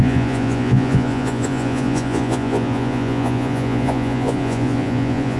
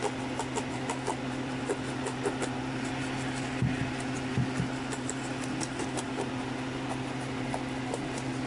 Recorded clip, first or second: second